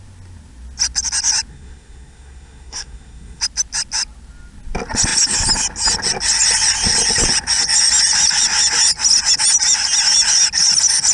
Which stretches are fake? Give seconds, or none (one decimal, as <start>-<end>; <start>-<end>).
1.5-3.4